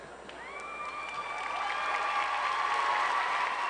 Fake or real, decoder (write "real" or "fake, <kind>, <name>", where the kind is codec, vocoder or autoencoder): real